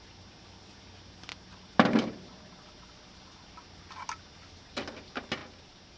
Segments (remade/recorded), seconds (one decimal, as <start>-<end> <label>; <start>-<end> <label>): 0.0-6.0 recorded